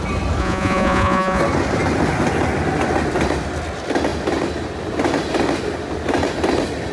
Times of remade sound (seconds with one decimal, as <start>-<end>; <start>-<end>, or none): 0.4-1.4